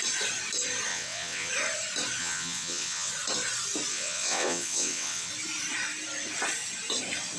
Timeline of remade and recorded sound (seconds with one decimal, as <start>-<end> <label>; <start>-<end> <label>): 0.0-0.9 recorded; 0.9-1.5 remade; 1.5-2.2 recorded; 2.2-3.1 remade; 3.1-3.9 recorded; 3.9-5.3 remade; 5.3-7.4 recorded